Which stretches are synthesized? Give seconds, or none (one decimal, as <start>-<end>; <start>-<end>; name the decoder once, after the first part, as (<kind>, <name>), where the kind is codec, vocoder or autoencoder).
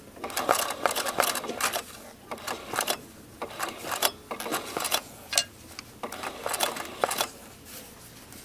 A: 4.5-5.3 (vocoder, Vocos)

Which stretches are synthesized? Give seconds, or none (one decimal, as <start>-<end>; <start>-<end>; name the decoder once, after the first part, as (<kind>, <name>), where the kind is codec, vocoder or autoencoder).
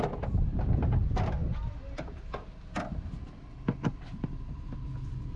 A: none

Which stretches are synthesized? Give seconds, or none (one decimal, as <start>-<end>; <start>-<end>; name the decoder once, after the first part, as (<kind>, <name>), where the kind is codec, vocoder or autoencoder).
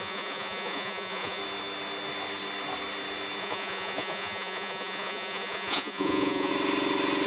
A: 0.0-1.4 (vocoder, Vocos); 3.4-6.5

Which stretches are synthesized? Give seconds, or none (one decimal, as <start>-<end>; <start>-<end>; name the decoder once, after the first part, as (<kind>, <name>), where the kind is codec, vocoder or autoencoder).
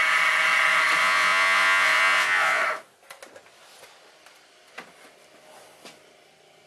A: 1.0-2.6 (vocoder, Vocos)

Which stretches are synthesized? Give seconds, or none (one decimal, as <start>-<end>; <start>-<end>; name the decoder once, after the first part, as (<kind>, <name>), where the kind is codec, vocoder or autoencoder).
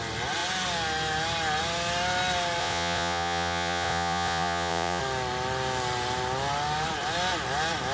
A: 2.6-5.0 (vocoder, Vocos)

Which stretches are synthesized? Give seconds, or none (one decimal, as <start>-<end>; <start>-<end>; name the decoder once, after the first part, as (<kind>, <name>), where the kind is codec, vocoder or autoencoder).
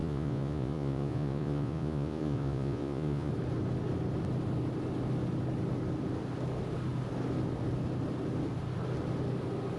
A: 0.0-3.3 (vocoder, Vocos)